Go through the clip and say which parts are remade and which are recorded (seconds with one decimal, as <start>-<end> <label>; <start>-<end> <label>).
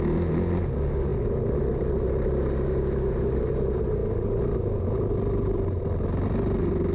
0.0-6.9 recorded